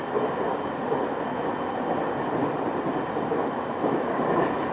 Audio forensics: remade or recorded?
recorded